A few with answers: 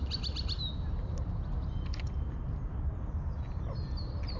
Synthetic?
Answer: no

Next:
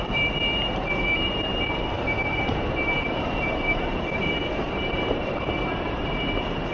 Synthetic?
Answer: yes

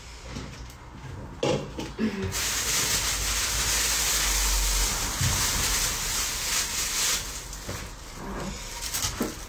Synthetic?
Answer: no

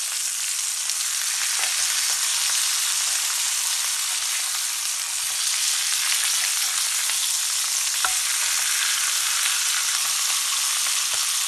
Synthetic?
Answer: no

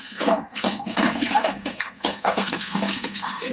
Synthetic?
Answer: yes